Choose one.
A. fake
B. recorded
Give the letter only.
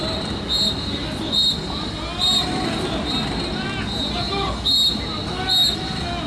B